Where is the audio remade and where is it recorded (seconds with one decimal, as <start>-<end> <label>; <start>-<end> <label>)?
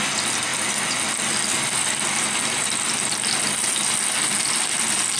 0.0-5.2 recorded